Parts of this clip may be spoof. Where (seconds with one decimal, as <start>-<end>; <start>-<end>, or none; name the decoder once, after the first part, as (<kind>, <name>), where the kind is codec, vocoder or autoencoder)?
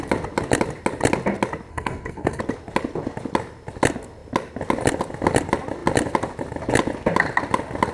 1.7-2.4 (codec, SNAC)